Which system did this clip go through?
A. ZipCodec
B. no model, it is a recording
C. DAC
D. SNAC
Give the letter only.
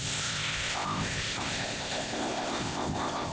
A